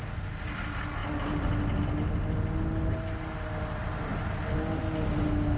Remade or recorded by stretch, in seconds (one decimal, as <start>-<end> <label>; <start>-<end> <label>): 0.0-5.6 recorded